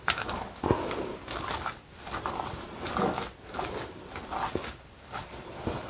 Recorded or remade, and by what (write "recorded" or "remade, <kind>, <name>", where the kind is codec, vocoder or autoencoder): recorded